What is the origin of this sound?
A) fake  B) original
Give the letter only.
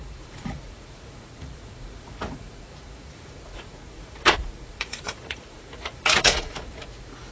A